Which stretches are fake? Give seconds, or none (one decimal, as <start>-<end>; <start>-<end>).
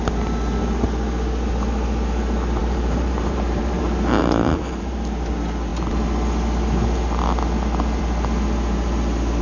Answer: 2.6-5.3